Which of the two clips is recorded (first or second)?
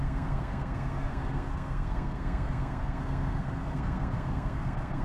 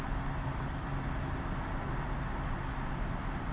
second